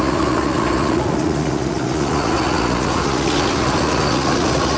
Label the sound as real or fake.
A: fake